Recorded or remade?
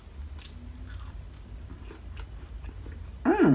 recorded